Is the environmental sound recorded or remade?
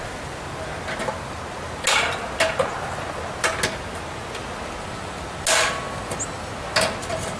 recorded